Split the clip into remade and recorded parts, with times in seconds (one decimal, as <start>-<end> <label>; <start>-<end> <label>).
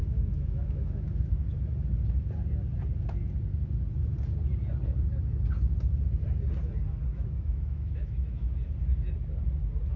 0.0-1.7 remade; 1.7-7.1 recorded; 7.1-8.6 remade; 8.6-10.0 recorded